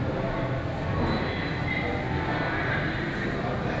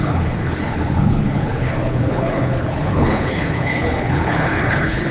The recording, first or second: first